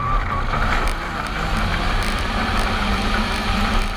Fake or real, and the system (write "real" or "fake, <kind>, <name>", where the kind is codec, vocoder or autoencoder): fake, vocoder, BigVGAN v2